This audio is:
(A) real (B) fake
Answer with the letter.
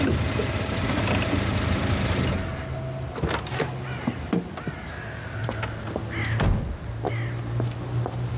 A